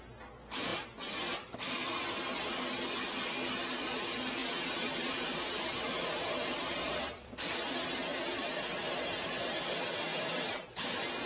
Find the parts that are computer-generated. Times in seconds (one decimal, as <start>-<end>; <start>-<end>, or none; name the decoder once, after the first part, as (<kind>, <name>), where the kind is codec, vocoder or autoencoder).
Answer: 4.4-7.4 (vocoder, BigVGAN v2); 8.1-9.6; 10.1-10.9